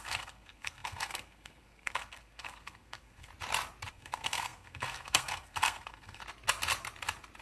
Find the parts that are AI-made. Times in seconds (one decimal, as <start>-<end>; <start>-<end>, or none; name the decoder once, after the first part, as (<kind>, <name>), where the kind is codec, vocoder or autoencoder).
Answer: 0.0-3.3 (codec, SNAC); 3.9-6.2